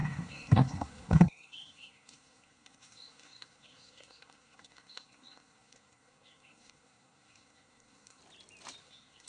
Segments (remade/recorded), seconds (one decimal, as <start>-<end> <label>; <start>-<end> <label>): 0.0-8.2 remade; 8.2-8.8 recorded; 8.8-9.3 remade